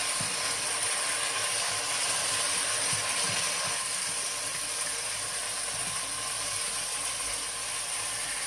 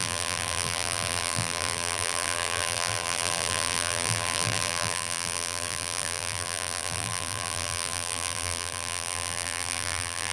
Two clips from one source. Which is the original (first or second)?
first